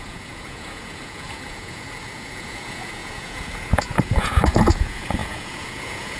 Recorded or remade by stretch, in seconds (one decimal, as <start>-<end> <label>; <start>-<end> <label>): 0.0-6.2 remade